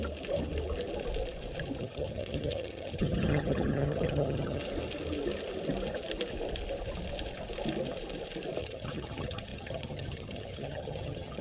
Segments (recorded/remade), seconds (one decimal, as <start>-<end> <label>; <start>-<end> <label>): 0.0-1.8 recorded; 1.8-4.6 remade; 4.6-8.6 recorded; 8.6-11.4 remade